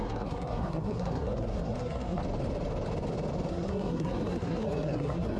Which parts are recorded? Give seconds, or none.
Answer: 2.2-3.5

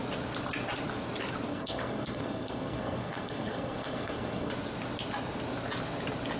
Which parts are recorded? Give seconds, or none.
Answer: 0.0-1.5; 4.5-6.4